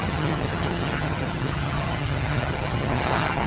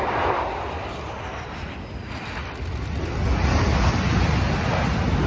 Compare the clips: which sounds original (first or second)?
second